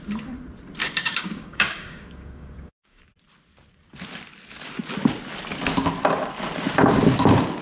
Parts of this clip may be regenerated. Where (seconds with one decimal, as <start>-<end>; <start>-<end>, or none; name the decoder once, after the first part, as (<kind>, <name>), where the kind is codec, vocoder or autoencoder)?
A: 0.8-3.0 (codec, DAC)